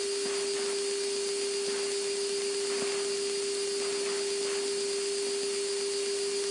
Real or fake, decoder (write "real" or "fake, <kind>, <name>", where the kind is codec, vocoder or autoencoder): real